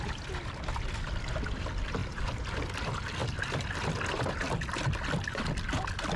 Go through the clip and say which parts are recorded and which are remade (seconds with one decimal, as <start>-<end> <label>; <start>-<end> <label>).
0.0-2.0 recorded; 2.0-2.6 remade; 2.6-6.2 recorded